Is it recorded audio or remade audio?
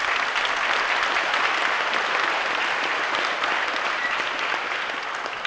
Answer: recorded